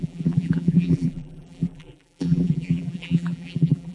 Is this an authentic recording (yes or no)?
no